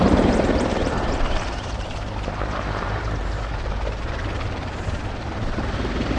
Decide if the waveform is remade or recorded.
remade